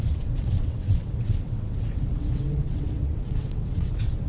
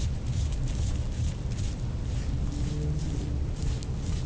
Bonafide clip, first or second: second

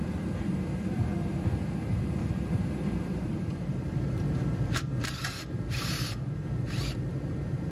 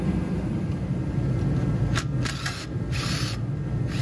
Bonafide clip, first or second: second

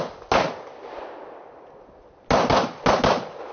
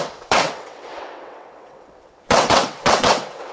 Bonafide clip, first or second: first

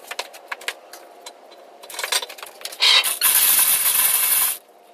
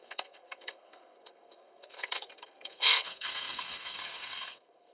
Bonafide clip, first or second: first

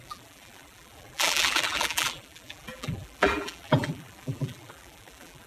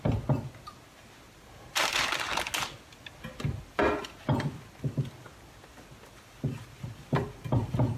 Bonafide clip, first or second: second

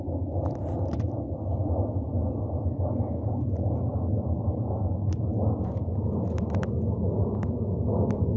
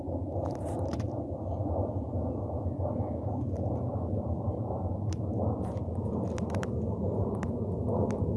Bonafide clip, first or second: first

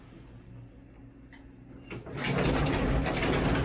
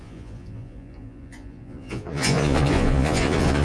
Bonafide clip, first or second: first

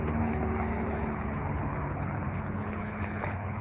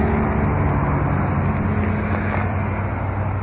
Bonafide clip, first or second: second